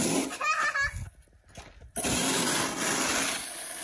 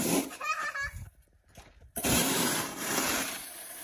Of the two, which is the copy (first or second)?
second